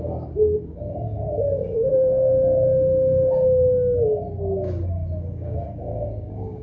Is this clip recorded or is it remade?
remade